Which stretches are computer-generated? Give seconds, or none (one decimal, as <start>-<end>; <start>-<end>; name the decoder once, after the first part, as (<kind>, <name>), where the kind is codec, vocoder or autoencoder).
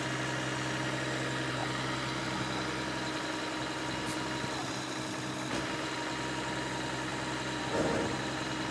none